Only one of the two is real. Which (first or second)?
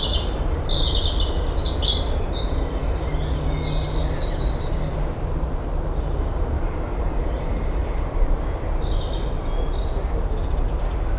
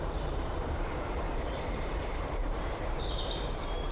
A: first